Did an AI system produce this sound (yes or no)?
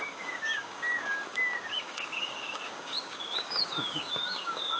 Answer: yes